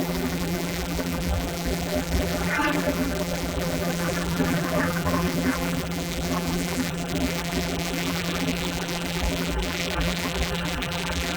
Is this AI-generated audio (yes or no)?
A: yes